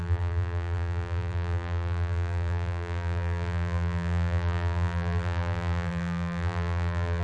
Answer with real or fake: fake